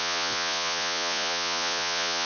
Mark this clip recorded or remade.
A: remade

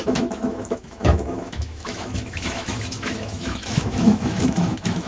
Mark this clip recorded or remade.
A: remade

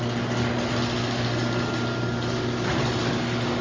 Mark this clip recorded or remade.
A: recorded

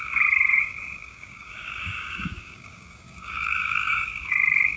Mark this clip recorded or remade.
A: remade